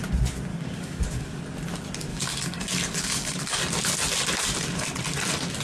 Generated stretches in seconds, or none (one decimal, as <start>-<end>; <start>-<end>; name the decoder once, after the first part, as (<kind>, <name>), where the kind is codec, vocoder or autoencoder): 0.5-1.4 (codec, DAC); 2.1-3.6